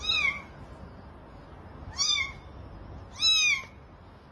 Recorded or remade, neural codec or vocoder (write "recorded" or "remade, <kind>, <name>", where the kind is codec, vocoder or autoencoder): recorded